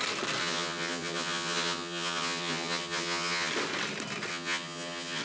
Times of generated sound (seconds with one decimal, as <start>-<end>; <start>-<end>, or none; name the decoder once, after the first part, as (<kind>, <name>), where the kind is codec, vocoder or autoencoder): 0.4-3.5 (vocoder, HiFi-GAN); 4.3-5.2